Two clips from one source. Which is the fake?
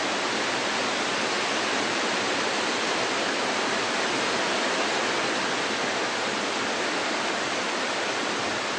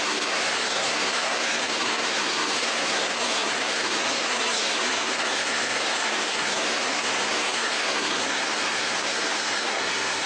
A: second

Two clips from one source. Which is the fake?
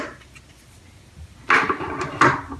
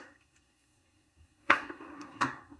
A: second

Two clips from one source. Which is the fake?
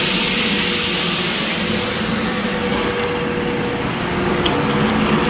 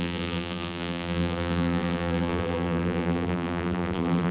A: second